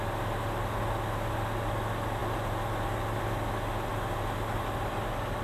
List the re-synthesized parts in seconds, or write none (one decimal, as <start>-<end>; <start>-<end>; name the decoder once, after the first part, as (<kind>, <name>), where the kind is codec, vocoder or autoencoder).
none